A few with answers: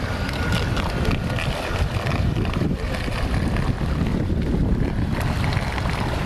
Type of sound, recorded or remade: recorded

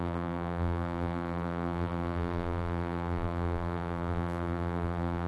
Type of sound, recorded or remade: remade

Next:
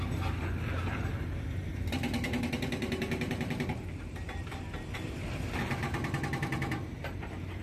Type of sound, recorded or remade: remade